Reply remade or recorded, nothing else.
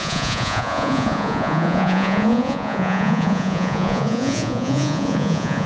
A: remade